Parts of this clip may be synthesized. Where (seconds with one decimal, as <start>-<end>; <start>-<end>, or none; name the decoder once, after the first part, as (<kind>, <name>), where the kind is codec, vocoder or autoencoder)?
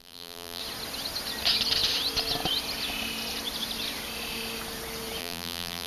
0.0-0.6 (vocoder, BigVGAN v2); 5.2-5.9